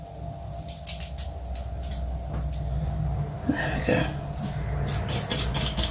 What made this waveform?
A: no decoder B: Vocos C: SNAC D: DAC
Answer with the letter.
A